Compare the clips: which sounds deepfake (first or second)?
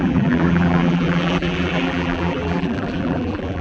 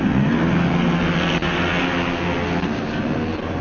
first